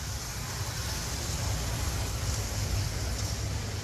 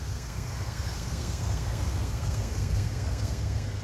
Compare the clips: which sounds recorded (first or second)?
first